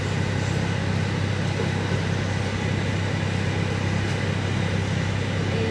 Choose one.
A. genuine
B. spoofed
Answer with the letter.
A